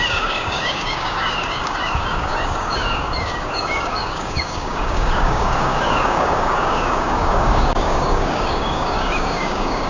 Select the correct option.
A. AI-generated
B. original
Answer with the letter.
A